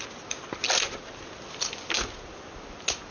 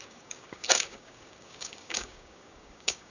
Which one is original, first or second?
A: first